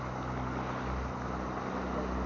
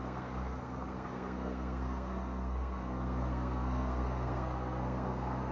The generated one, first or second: second